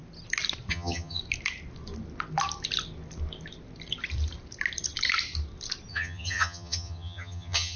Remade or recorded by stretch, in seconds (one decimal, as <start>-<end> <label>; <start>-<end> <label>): 0.0-0.7 recorded; 0.7-1.2 remade; 1.2-5.9 recorded; 5.9-7.8 remade